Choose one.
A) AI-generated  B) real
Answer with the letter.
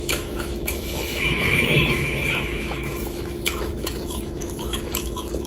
A